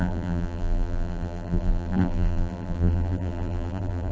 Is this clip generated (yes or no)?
yes